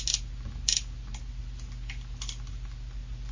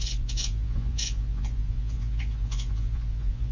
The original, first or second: first